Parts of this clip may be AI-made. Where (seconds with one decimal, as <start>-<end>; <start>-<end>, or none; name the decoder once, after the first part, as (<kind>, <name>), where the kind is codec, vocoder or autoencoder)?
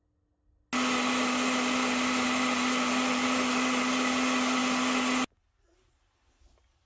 none